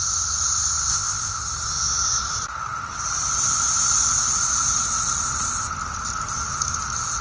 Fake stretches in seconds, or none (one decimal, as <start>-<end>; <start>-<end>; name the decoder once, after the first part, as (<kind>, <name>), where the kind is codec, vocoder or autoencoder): 0.9-1.4 (codec, ZipCodec)